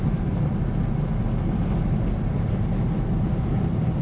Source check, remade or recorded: recorded